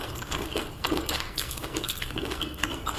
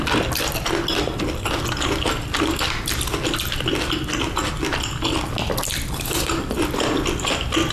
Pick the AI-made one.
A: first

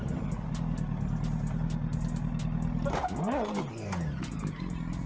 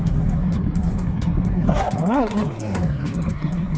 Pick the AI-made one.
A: second